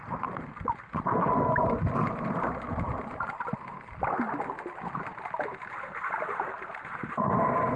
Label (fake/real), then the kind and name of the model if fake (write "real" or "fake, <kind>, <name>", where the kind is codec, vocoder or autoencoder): real